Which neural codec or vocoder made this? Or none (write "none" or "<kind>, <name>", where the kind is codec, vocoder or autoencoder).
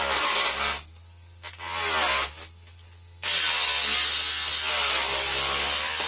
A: none